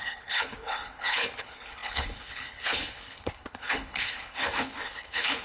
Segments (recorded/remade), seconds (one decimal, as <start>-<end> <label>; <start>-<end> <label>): 0.0-5.4 remade